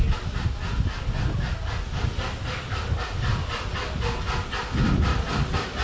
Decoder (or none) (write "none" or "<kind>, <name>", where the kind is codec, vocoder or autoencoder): none